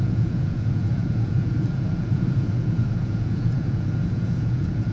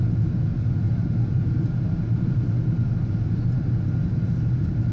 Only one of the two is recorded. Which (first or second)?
second